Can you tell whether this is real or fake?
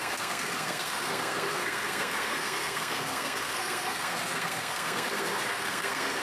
fake